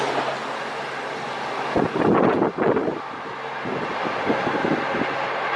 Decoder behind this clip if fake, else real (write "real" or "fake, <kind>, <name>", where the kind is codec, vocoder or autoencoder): real